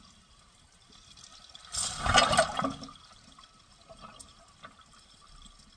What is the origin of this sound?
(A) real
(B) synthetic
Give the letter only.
A